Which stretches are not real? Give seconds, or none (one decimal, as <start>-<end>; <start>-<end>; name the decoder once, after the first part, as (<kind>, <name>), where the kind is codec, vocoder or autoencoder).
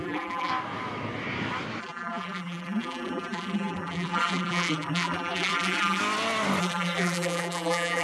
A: 0.0-0.5 (vocoder, BigVGAN v2); 1.8-6.0; 6.6-8.0